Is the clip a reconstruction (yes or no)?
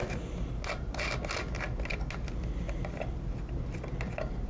no